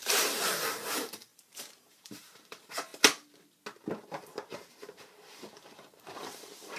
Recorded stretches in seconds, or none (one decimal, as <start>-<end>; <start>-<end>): 2.9-4.7